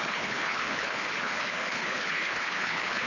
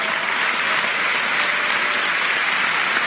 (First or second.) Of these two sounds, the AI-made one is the first